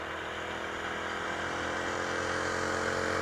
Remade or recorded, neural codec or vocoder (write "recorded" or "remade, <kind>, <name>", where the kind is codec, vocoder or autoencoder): recorded